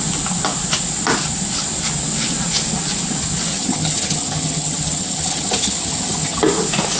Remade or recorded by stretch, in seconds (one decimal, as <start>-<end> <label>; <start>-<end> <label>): 0.0-3.5 recorded; 3.5-6.4 remade; 6.4-7.0 recorded